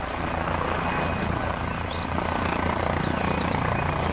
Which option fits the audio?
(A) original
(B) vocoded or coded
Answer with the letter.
B